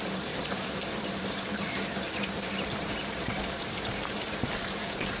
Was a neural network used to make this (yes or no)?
yes